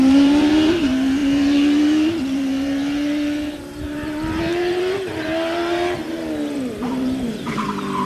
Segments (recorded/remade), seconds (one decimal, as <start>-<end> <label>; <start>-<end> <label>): 0.0-8.1 remade